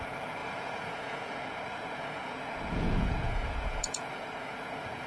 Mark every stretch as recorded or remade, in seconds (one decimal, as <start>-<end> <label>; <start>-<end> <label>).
0.0-5.1 remade